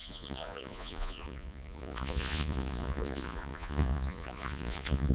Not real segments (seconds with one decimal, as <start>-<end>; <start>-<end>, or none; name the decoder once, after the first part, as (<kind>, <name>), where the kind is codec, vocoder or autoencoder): 0.0-5.1 (vocoder, Vocos)